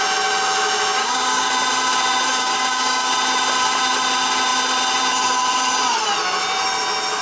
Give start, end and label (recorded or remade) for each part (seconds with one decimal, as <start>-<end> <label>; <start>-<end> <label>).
0.0-1.0 recorded; 1.0-1.5 remade; 1.5-2.3 recorded; 2.3-3.1 remade; 3.1-7.2 recorded